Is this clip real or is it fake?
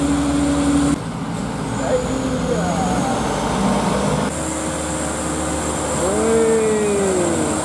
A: real